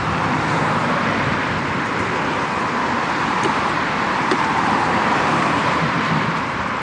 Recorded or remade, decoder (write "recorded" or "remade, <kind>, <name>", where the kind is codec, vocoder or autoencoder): remade, vocoder, BigVGAN v2